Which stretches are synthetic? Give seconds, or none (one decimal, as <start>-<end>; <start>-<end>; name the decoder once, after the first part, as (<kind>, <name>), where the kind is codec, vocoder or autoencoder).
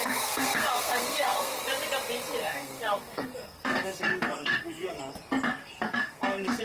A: 0.0-1.7 (codec, SNAC); 2.4-5.0; 5.6-6.6